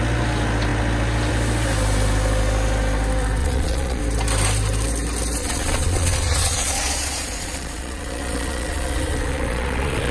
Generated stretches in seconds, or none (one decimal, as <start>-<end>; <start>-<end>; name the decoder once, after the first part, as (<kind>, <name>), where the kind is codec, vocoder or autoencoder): 3.4-4.0 (vocoder, Vocos); 5.4-10.1